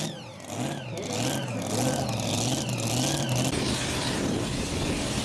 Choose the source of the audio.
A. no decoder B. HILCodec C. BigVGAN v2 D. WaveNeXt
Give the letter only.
A